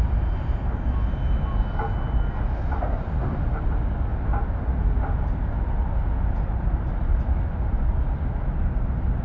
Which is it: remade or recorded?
recorded